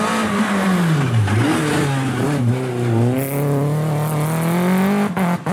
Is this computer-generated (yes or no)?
no